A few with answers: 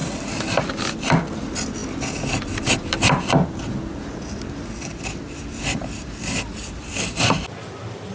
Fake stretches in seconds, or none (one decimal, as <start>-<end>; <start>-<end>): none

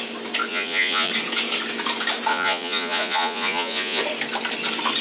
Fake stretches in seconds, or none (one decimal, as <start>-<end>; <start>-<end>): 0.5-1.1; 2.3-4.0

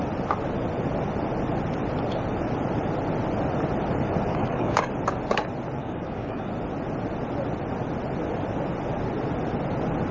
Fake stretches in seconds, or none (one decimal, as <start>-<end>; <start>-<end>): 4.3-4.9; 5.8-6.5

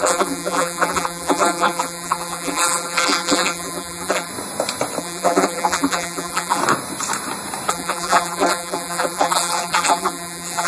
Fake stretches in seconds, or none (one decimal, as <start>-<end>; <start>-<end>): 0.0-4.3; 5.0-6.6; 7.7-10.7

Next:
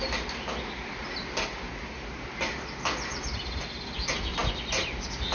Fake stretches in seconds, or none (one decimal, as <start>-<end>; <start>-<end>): none

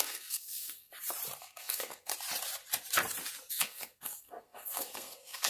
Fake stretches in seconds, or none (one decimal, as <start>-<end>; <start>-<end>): 0.0-0.9; 1.4-2.1; 3.5-5.5